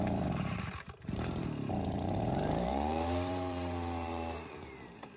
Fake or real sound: fake